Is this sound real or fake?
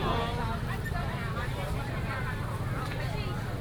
real